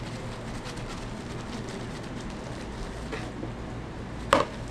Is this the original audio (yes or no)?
yes